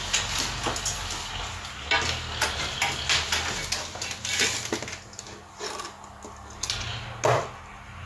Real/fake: real